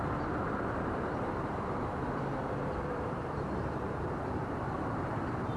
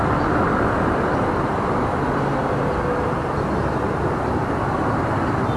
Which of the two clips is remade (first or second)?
first